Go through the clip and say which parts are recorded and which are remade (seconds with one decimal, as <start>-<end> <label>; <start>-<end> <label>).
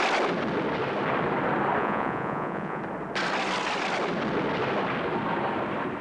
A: 0.0-1.8 recorded; 1.8-2.8 remade; 2.8-6.0 recorded